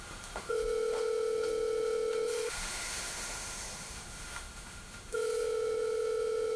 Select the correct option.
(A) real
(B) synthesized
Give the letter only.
B